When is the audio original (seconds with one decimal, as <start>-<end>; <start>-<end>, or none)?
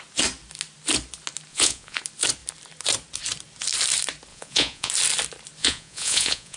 0.0-1.5; 2.0-4.3; 4.9-5.6